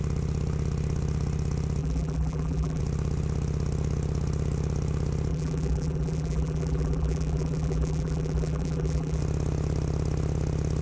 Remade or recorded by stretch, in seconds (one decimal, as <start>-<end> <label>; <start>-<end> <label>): 0.0-1.8 recorded; 1.8-2.8 remade; 2.8-5.3 recorded; 5.3-9.2 remade; 9.2-10.8 recorded

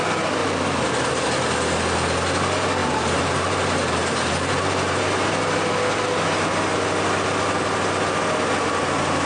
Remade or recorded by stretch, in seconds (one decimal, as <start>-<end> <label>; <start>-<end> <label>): 0.0-0.4 recorded; 0.4-1.2 remade; 1.2-2.8 recorded; 2.8-5.0 remade; 5.0-9.3 recorded

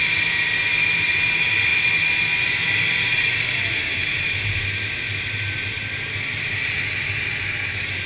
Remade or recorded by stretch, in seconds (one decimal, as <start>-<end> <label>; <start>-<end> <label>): 0.0-1.7 remade; 1.7-2.4 recorded; 2.4-8.1 remade

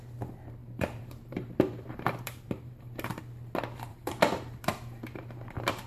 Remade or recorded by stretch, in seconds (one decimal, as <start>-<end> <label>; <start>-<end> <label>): 0.0-0.6 recorded; 0.6-3.2 remade; 3.2-3.9 recorded; 3.9-5.9 remade

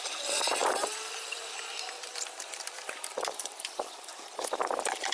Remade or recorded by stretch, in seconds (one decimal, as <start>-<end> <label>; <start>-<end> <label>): 0.0-5.1 remade

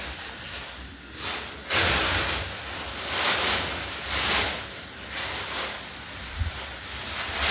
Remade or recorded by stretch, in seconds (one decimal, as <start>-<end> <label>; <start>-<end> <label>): 0.0-7.5 recorded

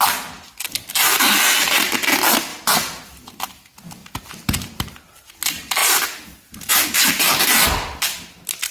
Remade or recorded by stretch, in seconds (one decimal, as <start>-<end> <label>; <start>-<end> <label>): 0.0-2.5 recorded; 2.5-3.1 remade; 3.1-4.0 recorded; 4.0-5.3 remade; 5.3-8.7 recorded

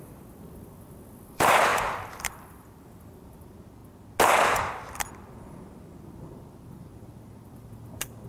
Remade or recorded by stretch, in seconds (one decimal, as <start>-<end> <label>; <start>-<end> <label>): 0.0-3.8 remade; 3.8-4.6 recorded; 4.6-8.3 remade